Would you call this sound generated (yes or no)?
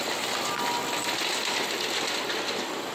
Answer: no